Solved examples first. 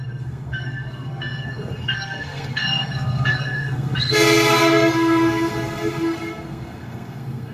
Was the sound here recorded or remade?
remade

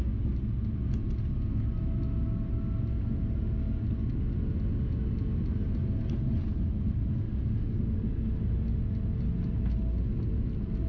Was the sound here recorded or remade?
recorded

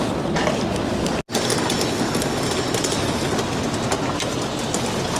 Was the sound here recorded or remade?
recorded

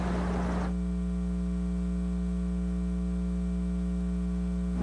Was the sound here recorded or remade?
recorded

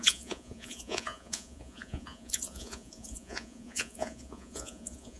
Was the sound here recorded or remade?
remade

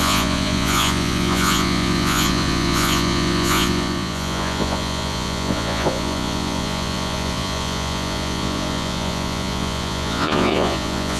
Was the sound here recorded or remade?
remade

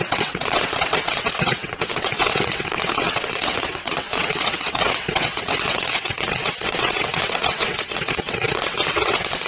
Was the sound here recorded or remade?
remade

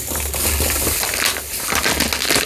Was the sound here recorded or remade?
recorded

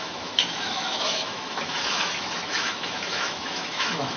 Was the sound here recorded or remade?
remade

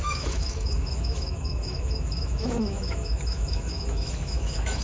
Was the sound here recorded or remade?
remade